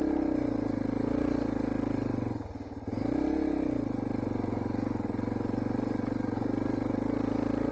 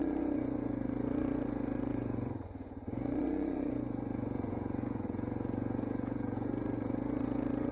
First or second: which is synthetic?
second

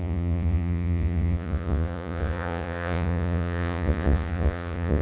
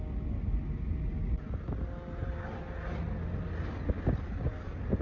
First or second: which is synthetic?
first